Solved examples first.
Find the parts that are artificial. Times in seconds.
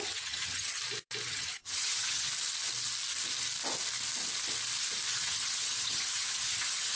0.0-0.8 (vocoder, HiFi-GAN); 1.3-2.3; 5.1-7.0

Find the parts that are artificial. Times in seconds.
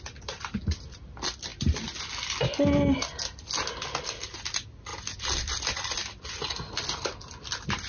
none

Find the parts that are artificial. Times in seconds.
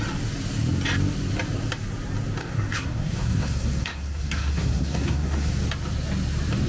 2.4-5.5 (codec, SNAC)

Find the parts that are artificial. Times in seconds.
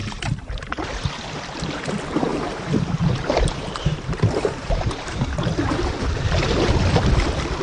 0.0-1.9 (vocoder, BigVGAN v2); 2.3-5.2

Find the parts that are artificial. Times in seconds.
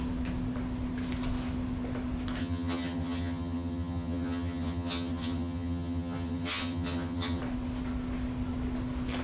2.4-7.4 (vocoder, HiFi-GAN)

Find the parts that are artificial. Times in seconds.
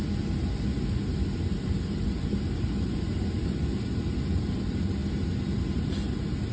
none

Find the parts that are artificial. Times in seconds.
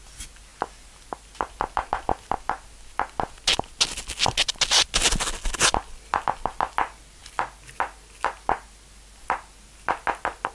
none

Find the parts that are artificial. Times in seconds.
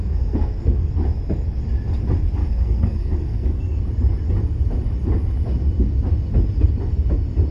0.0-0.9 (codec, SNAC); 2.4-3.8